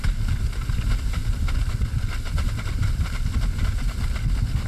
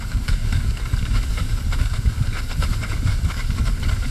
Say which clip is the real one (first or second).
first